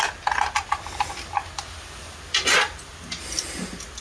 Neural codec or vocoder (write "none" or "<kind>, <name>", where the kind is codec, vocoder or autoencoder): none